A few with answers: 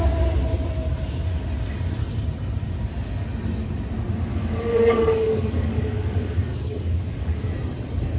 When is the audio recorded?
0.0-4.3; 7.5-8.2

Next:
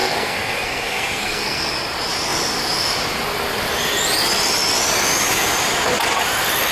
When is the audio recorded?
1.7-6.7

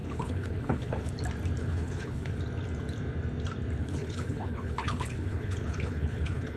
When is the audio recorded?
1.1-1.6; 2.4-3.8